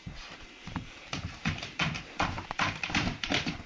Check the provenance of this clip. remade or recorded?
remade